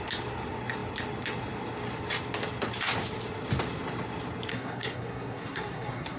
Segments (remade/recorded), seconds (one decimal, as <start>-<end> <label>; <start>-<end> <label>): 0.0-4.5 recorded; 4.5-6.2 remade